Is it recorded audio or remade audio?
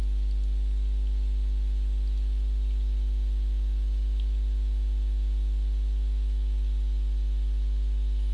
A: recorded